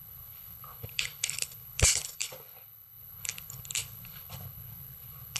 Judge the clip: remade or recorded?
remade